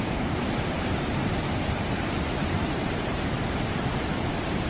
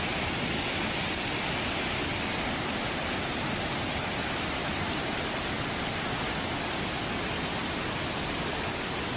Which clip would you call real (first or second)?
second